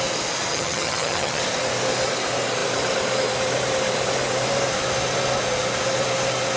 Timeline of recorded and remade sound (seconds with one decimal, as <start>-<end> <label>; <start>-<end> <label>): 0.0-0.5 recorded; 0.5-1.4 remade; 1.4-6.6 recorded